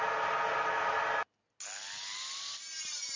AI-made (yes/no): no